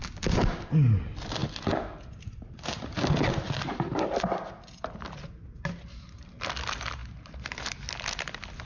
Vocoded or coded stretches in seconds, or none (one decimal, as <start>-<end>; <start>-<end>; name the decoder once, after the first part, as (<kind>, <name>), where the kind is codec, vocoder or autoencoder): none